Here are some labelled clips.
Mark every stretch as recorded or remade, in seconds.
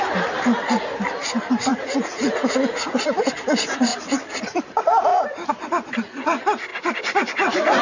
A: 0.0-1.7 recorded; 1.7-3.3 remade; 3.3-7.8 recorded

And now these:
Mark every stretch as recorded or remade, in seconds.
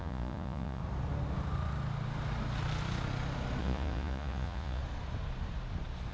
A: 0.0-0.8 remade; 0.8-3.6 recorded; 3.6-4.8 remade; 4.8-6.1 recorded